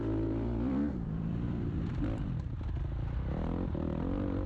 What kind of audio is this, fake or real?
fake